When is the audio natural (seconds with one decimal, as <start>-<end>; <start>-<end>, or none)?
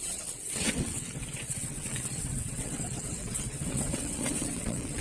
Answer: none